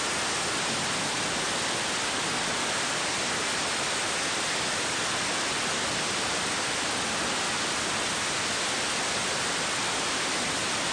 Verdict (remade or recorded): recorded